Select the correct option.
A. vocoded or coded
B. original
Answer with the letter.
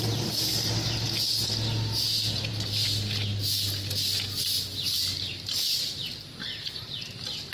B